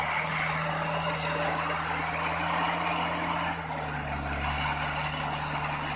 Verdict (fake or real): real